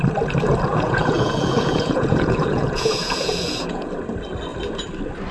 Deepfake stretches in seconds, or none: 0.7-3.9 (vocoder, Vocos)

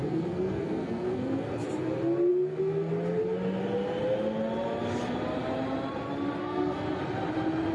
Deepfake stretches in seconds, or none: 0.0-1.6 (codec, SNAC); 2.3-2.9; 6.4-7.0

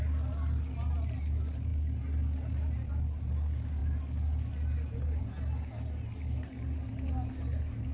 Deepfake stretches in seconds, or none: none

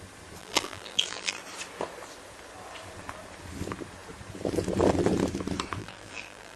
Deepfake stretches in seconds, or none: 0.4-1.4 (vocoder, BigVGAN v2); 5.8-6.6